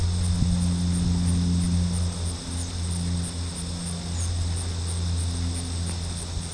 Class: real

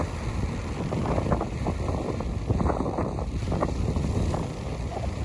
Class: real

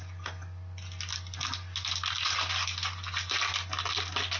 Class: real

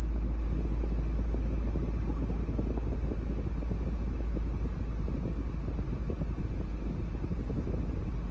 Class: real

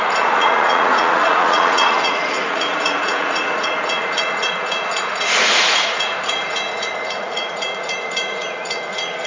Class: fake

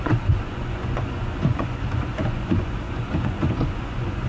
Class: fake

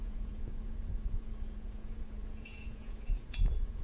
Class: fake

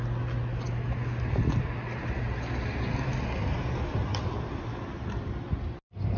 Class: real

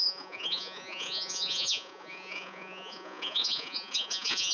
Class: fake